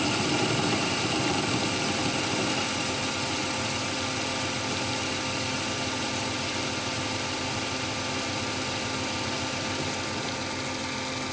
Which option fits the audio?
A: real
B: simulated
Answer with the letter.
A